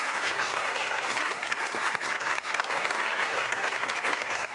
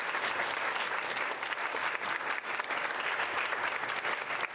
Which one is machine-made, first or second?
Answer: first